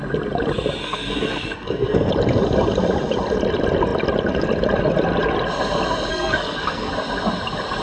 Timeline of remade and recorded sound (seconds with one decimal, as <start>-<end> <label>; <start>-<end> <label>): 0.0-0.8 recorded; 0.8-2.1 remade; 2.1-6.1 recorded; 6.1-6.9 remade; 6.9-7.8 recorded